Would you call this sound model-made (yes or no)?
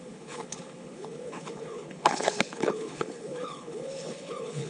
yes